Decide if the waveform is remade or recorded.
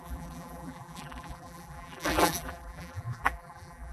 remade